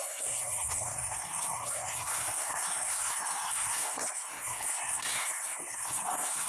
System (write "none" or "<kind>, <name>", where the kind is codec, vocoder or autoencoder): codec, SNAC